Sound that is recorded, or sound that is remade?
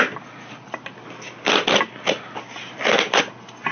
recorded